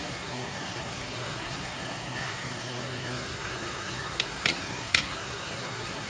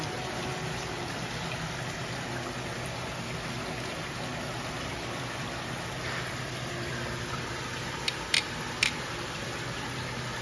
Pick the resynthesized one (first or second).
first